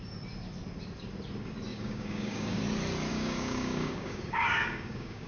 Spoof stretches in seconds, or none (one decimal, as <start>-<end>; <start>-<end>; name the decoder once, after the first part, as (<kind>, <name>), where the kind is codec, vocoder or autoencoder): 1.7-2.6 (codec, DAC); 3.1-5.3